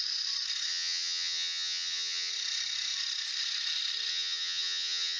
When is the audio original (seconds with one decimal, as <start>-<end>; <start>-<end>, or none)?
0.0-0.7; 2.3-4.1